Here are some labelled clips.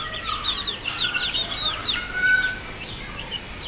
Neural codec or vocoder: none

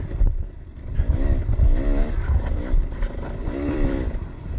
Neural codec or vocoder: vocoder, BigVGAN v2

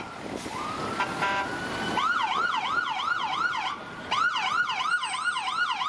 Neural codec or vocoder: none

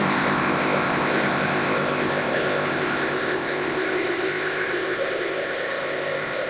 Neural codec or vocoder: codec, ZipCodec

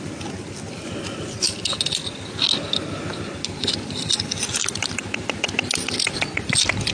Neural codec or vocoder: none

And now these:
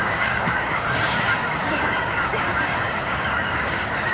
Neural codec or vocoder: codec, DAC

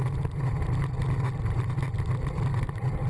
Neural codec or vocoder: none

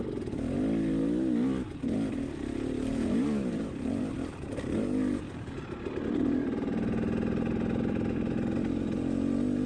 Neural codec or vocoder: none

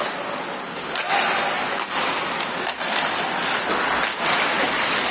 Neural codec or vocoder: none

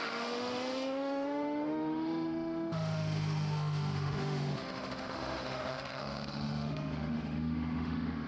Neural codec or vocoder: autoencoder, DAC-VAE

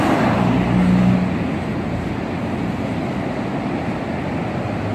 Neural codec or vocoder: none